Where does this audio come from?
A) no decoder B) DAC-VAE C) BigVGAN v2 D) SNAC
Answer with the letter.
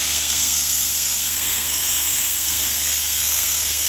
D